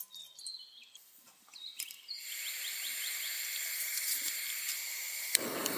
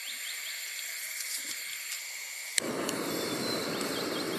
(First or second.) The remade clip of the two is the first